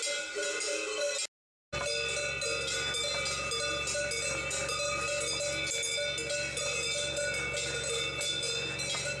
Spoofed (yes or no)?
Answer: no